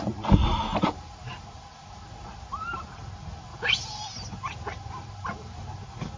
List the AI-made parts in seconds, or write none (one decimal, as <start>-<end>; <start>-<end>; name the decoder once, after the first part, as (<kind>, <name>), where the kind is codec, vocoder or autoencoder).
0.4-2.4 (vocoder, BigVGAN v2); 3.5-5.8